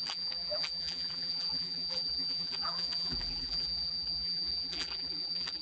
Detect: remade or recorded remade